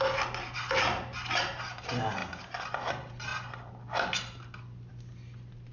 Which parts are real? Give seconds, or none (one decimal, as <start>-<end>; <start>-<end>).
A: 0.0-2.2; 2.9-5.7